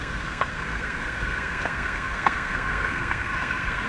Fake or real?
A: fake